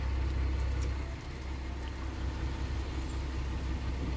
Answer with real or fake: real